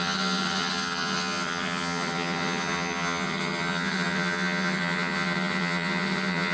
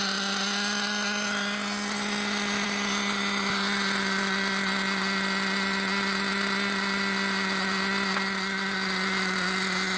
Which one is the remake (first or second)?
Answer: first